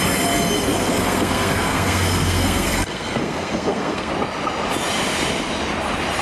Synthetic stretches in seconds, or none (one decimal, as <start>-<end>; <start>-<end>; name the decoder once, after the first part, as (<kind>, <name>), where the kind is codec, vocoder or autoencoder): 0.7-4.1 (codec, SNAC)